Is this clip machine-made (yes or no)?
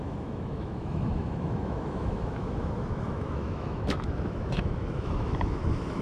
yes